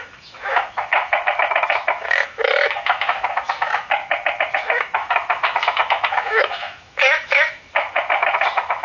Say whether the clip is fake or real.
fake